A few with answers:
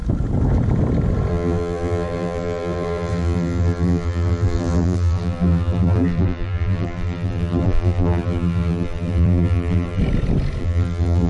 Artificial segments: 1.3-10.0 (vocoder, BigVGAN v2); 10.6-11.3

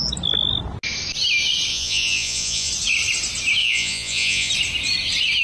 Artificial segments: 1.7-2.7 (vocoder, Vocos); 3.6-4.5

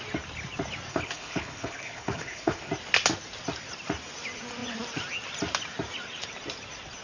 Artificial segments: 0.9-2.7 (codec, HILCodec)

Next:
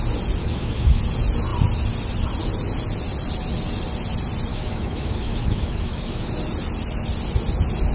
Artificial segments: 0.4-1.0 (autoencoder, DAC-VAE); 4.5-6.3